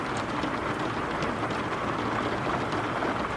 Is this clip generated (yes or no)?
no